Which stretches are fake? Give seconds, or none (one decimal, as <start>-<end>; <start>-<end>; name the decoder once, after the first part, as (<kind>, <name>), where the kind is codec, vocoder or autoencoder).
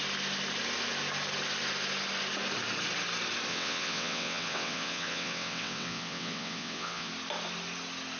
3.5-7.1 (vocoder, WaveNeXt)